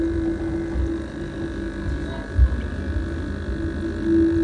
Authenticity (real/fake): real